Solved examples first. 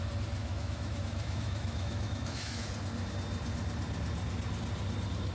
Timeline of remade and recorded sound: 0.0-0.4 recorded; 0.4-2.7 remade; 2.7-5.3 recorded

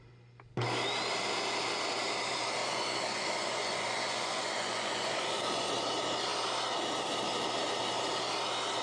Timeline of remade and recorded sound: 0.0-2.6 recorded; 2.6-5.7 remade; 5.7-8.8 recorded

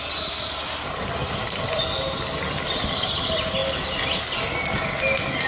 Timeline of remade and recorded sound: 0.0-5.5 recorded